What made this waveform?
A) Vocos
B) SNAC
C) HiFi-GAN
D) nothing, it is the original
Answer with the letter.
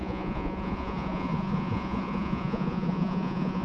A